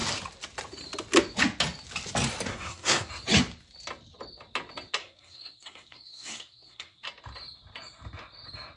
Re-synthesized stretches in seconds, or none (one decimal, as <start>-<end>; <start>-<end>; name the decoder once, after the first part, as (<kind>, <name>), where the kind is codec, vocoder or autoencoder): 2.5-3.1 (codec, SNAC); 5.0-7.0